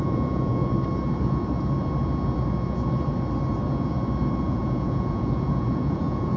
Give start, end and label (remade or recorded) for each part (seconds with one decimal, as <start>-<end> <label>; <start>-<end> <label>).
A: 0.0-0.6 remade; 0.6-4.4 recorded; 4.4-6.4 remade